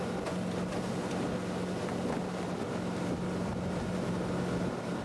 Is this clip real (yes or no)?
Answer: yes